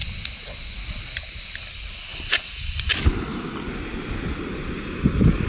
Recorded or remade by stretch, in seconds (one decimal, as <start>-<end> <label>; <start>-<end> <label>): 0.0-2.1 recorded; 2.1-2.9 remade; 2.9-5.5 recorded